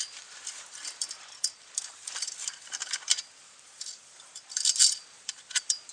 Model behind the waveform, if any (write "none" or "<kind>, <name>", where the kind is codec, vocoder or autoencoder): vocoder, BigVGAN v2